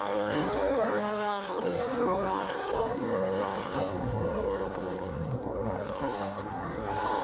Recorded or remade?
remade